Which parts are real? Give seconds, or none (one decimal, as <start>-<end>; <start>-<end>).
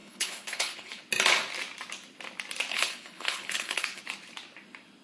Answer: 1.0-2.7; 4.0-5.0